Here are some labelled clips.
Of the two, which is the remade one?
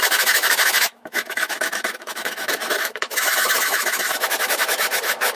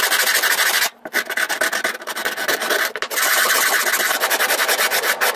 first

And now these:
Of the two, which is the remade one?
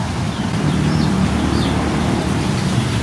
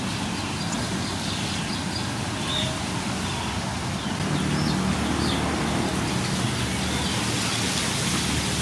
first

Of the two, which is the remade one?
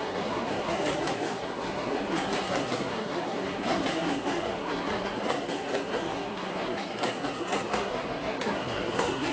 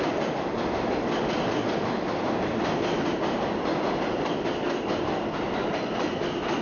first